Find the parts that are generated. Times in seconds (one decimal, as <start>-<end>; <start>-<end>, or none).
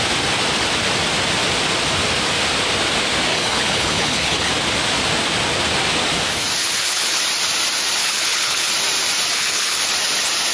3.3-4.5; 6.6-7.2; 8.0-8.7; 9.3-9.8